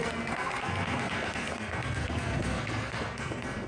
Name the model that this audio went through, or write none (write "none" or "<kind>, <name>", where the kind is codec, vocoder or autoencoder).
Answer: codec, SNAC